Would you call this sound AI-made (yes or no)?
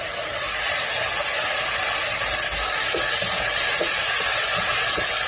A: no